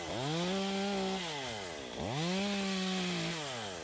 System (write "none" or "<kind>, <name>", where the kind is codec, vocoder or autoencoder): none